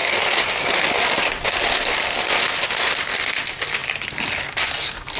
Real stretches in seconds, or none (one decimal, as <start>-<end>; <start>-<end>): 0.0-5.2